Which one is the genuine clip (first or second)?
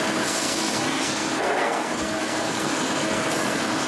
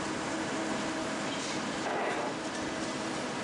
second